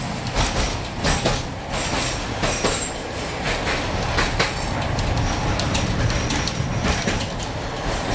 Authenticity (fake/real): real